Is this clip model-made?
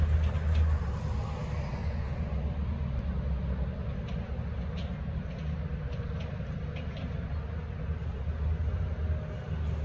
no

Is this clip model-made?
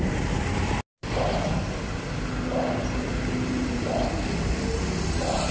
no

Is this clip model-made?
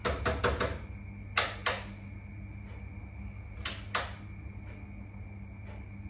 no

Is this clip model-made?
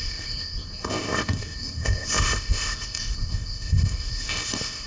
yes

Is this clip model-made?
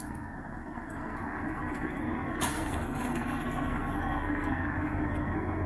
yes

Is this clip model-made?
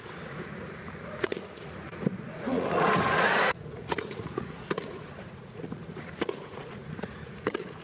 yes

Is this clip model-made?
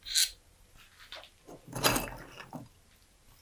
no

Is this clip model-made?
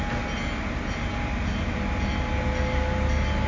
no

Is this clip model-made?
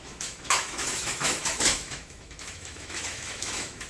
yes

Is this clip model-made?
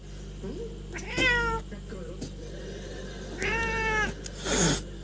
no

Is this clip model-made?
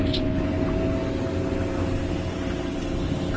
no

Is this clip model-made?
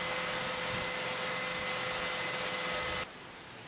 no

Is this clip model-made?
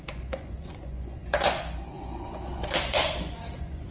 yes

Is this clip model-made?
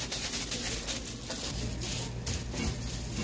no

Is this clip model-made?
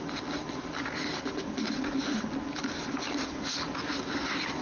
no